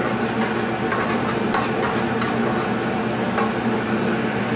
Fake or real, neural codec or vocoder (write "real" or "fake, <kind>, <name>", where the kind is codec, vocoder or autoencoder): real